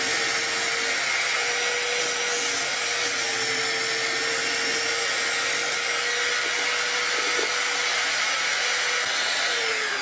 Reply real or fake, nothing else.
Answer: real